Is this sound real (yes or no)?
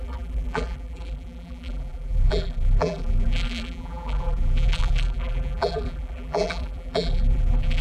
no